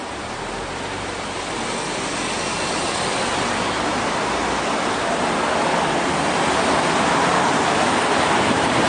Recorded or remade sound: recorded